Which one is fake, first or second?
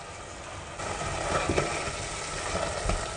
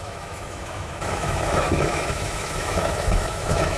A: second